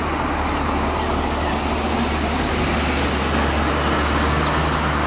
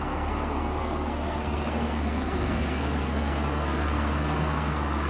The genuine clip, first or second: first